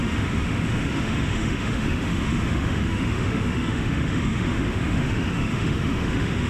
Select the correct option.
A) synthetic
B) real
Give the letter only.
A